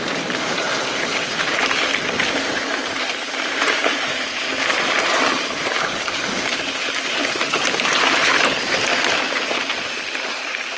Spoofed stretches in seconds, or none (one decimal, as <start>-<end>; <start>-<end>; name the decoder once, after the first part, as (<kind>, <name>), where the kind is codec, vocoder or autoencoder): 0.0-1.6 (vocoder, BigVGAN v2); 2.4-7.2; 8.2-8.9; 10.1-10.8